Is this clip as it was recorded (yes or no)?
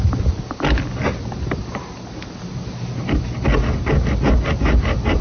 yes